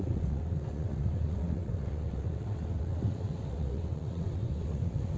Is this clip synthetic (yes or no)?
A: yes